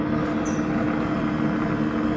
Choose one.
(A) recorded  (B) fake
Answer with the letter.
A